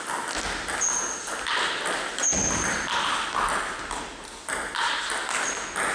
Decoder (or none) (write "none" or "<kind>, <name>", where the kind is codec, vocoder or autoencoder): none